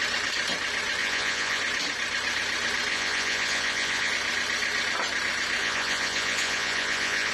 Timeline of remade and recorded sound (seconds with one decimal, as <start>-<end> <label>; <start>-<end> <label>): 0.0-1.0 recorded; 1.0-1.6 remade; 1.6-2.9 recorded; 2.9-4.1 remade; 4.1-5.6 recorded; 5.6-7.3 remade